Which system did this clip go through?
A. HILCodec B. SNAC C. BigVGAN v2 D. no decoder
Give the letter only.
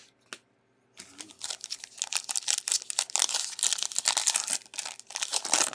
D